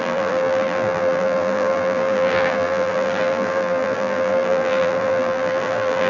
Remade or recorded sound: remade